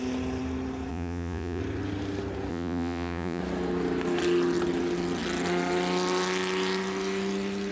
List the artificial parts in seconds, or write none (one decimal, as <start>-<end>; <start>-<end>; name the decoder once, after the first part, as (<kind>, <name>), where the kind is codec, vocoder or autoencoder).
0.9-1.6 (vocoder, Vocos); 2.5-3.4